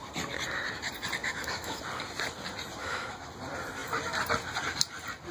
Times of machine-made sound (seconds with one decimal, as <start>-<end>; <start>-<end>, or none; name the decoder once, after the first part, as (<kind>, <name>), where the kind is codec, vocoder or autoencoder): 1.2-1.8 (autoencoder, DAC-VAE); 2.8-3.3